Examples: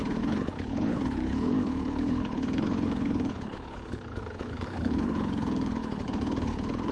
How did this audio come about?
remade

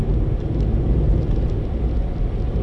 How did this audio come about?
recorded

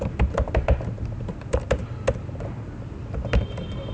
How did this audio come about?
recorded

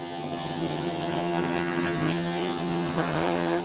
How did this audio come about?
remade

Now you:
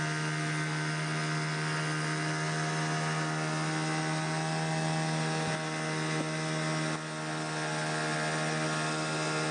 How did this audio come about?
recorded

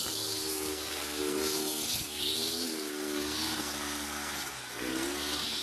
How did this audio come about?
remade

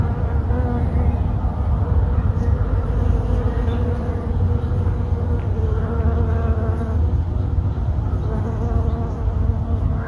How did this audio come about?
recorded